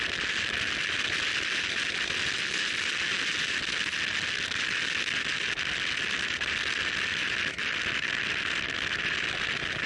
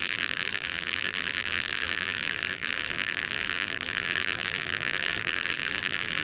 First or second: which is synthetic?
second